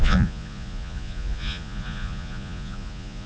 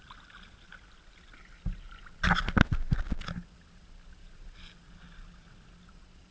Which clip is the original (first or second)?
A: second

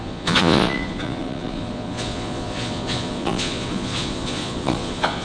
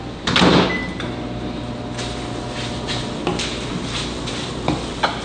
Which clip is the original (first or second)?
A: second